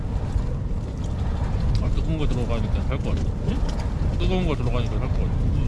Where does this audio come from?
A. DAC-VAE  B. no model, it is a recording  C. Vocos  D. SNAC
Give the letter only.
B